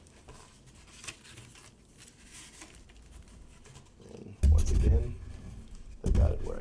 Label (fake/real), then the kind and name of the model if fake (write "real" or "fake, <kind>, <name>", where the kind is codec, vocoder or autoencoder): real